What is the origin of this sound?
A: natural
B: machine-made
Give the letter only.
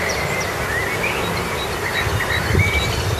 B